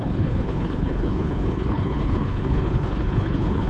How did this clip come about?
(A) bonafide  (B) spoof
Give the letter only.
B